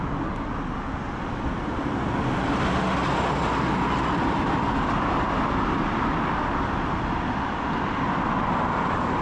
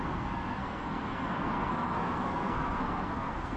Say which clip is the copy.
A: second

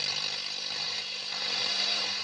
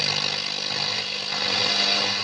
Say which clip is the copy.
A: first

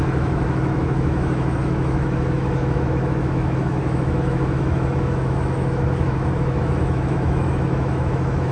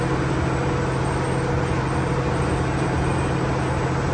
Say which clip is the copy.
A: first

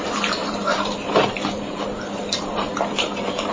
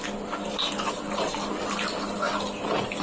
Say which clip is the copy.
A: first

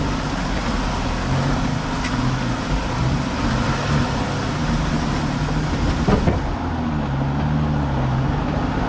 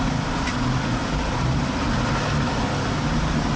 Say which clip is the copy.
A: second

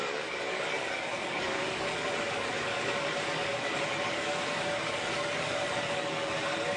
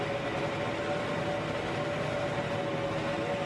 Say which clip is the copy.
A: first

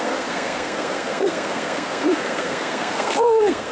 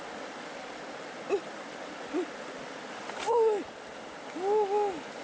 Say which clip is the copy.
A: first